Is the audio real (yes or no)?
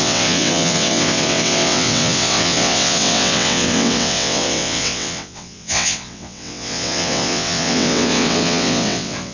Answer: no